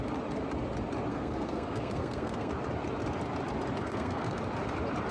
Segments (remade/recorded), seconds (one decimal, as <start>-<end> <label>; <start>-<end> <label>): 0.0-1.1 recorded; 1.1-2.5 remade; 2.5-3.8 recorded; 3.8-4.4 remade; 4.4-5.1 recorded